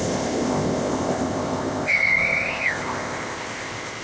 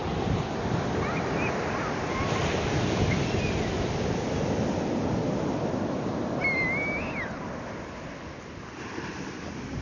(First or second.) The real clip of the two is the second